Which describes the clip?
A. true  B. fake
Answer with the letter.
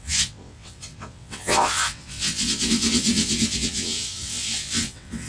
B